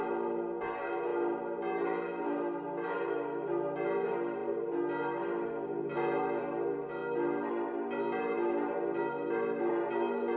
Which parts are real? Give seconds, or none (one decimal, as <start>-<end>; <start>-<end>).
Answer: 0.0-10.4